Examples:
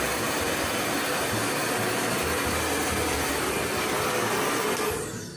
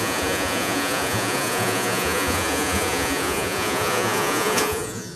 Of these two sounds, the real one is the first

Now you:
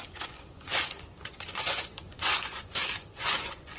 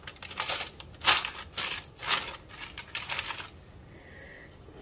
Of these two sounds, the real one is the second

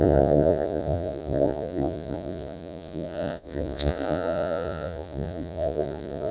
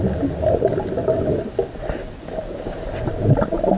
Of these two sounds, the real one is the second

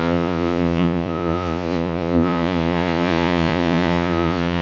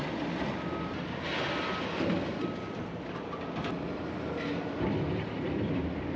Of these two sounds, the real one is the second